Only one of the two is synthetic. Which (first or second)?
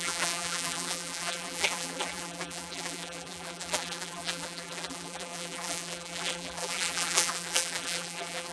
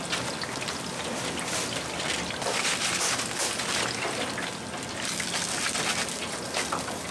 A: first